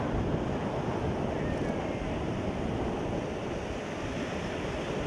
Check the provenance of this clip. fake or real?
real